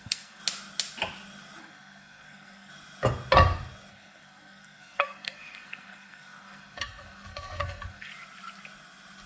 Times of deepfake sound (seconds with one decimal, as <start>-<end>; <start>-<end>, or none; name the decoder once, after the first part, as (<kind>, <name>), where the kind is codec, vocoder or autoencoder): 0.0-0.4 (codec, SNAC); 1.6-2.7; 3.9-8.1